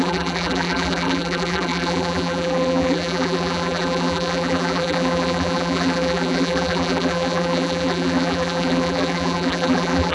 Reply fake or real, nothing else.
fake